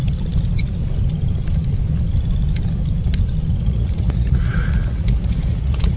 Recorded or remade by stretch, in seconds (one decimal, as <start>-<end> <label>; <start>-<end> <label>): 0.0-3.6 recorded; 3.6-6.0 remade